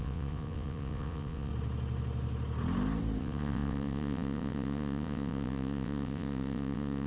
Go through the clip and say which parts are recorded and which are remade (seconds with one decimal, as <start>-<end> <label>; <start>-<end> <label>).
0.0-1.5 remade; 1.5-3.2 recorded; 3.2-7.1 remade